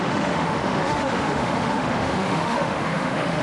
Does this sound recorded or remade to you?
remade